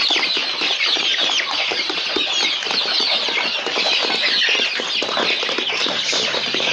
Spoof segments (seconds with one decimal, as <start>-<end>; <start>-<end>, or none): 0.4-2.8; 5.8-6.7